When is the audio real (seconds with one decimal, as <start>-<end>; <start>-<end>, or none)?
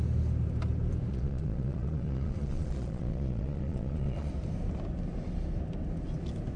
0.0-1.1; 4.3-6.6